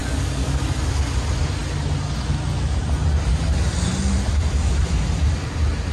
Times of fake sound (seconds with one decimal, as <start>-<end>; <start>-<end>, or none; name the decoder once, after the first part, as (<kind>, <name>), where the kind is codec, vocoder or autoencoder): 0.0-0.6 (codec, DAC)